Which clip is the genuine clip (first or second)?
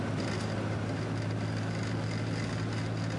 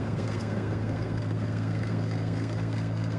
first